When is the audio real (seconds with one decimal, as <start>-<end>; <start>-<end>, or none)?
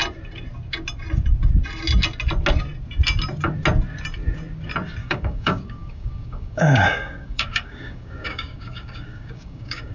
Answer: 0.0-5.0